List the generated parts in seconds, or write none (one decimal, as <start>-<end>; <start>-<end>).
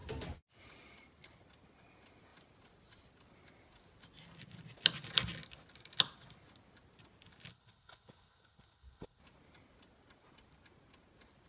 7.5-9.2